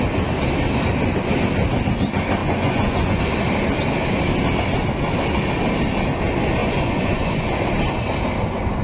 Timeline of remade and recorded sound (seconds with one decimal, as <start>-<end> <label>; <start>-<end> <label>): 0.0-2.4 recorded; 2.4-3.2 remade; 3.2-6.6 recorded; 6.6-7.6 remade; 7.6-8.8 recorded